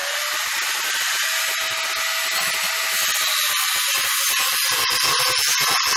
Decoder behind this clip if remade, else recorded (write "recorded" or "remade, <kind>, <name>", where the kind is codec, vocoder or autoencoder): recorded